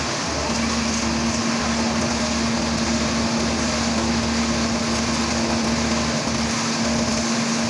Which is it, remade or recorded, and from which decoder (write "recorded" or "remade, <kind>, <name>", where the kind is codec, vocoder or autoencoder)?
recorded